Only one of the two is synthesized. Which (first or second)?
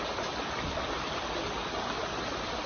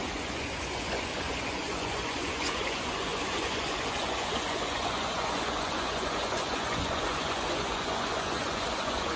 second